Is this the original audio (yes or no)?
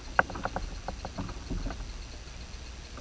yes